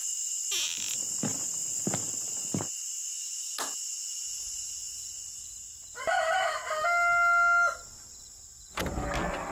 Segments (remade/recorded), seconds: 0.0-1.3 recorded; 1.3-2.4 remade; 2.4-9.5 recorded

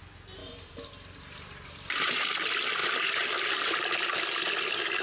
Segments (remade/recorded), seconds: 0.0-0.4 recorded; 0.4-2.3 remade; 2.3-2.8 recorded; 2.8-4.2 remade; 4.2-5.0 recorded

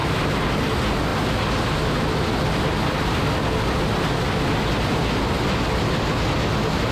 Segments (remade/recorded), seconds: 0.0-6.9 recorded

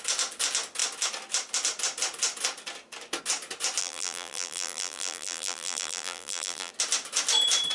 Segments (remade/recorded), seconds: 0.0-3.8 recorded; 3.8-6.7 remade; 6.7-7.7 recorded

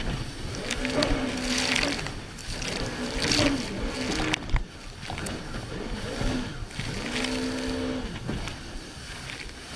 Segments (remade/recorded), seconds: 0.0-2.4 recorded; 2.4-3.2 remade; 3.2-9.8 recorded